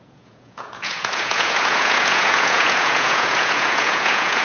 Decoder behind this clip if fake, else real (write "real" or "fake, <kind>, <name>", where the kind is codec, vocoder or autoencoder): fake, vocoder, Vocos